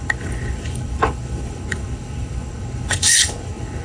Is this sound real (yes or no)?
no